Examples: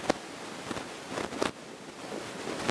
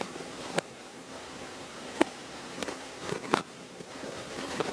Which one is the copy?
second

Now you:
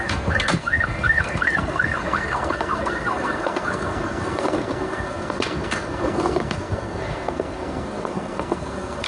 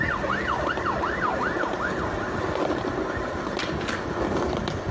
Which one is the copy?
first